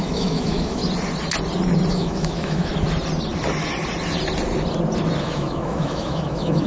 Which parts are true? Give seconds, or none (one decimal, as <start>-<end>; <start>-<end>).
0.8-1.9; 2.7-5.2

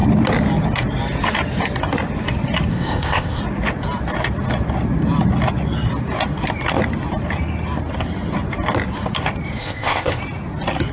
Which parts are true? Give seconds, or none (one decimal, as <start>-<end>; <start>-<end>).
0.0-2.7; 3.4-9.6; 10.2-10.9

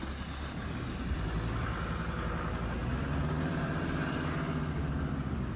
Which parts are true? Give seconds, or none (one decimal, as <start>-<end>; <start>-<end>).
0.0-2.8; 4.3-4.8

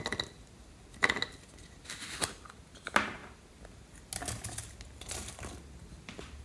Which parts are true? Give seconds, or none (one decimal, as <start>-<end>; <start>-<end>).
0.0-6.4

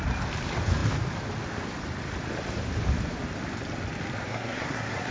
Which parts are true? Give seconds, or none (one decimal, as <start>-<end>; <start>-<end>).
0.0-4.2

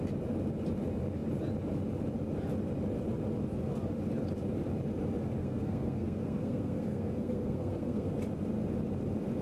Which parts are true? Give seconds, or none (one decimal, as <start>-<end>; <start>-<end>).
0.0-5.4; 8.1-9.4